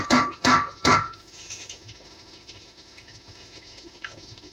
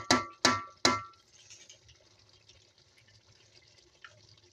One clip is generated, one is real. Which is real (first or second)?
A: second